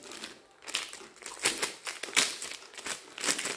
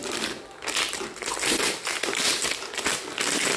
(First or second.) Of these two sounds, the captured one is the first